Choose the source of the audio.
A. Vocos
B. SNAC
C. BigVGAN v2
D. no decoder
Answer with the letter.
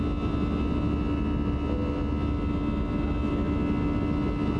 D